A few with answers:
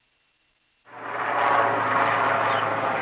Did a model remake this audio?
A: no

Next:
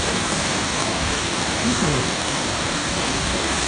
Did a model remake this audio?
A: yes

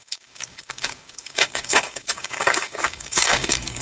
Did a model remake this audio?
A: yes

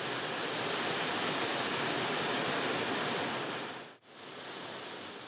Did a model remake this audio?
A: no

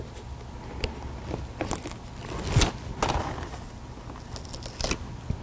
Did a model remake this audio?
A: no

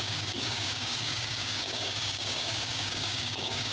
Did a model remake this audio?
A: yes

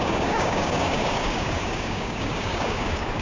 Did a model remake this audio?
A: yes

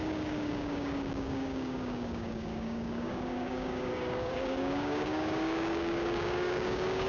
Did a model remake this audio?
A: yes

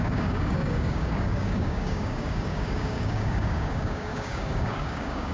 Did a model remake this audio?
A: yes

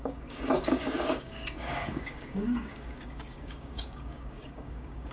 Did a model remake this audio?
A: yes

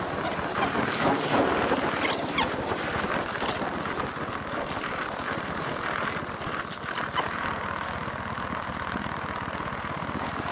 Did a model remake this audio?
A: no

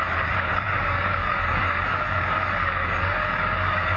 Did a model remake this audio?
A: yes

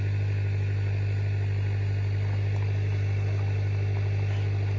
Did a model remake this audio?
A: no